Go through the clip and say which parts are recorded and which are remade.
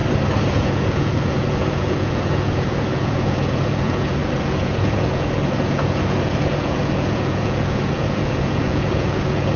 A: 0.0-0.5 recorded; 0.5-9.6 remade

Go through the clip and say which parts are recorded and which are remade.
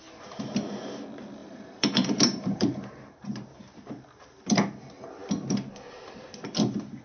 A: 0.0-1.4 recorded; 1.4-3.9 remade; 3.9-7.0 recorded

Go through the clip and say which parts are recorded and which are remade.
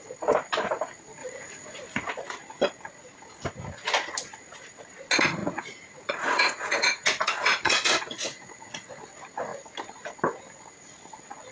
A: 0.0-1.2 recorded; 1.2-2.1 remade; 2.1-5.4 recorded; 5.4-9.0 remade; 9.0-11.5 recorded